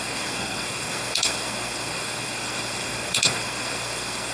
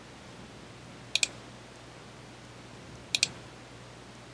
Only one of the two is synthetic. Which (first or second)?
first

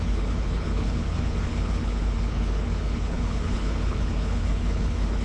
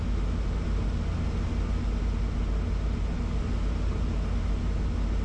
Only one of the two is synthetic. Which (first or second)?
first